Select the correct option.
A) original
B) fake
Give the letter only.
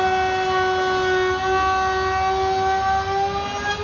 A